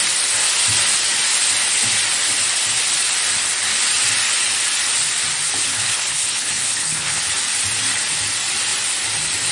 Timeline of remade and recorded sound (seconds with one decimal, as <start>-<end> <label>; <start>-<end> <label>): 0.0-5.7 recorded; 5.7-7.2 remade; 7.2-9.5 recorded